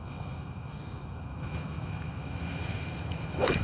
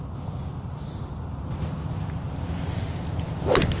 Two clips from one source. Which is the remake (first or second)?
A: first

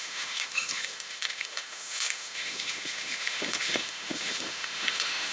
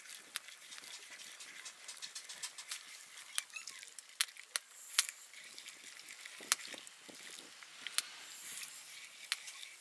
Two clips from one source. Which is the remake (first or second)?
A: first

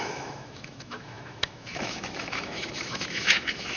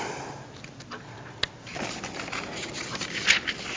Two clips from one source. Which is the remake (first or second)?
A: first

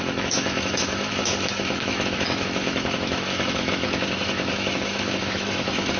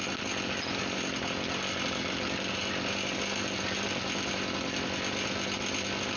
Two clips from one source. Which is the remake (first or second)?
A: first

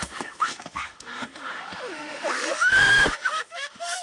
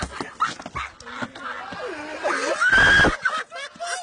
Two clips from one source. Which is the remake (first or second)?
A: first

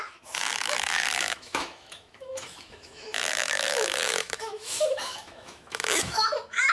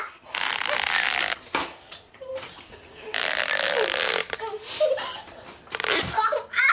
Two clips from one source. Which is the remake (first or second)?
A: first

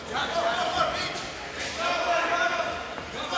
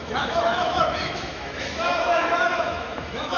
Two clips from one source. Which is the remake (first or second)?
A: second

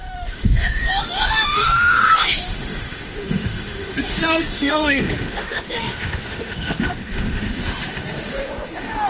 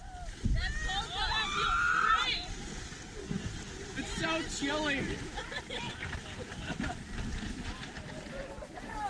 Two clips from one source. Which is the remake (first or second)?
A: first